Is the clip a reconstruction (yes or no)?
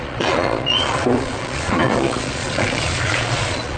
yes